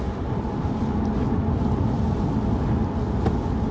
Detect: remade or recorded recorded